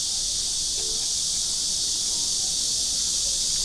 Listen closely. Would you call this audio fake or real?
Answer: real